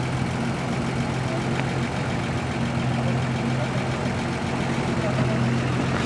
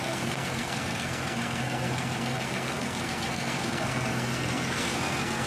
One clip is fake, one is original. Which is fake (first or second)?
second